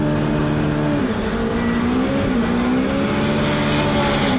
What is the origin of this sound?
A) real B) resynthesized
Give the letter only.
A